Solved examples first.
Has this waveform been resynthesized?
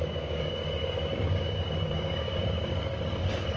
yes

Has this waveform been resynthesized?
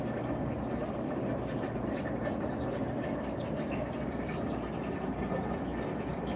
no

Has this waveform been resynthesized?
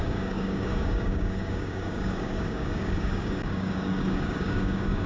yes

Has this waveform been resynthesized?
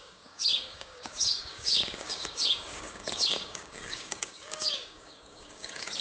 yes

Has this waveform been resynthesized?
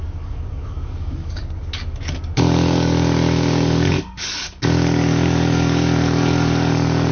yes